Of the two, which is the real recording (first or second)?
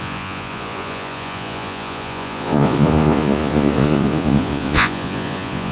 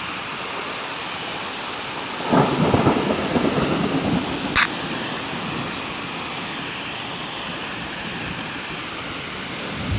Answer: second